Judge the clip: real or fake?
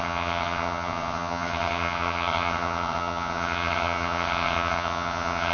fake